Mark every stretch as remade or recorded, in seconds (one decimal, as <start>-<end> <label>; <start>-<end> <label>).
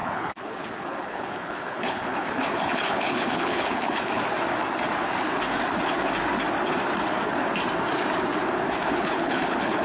0.0-4.2 remade; 4.2-8.7 recorded; 8.7-9.8 remade